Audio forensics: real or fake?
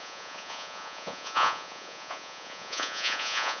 fake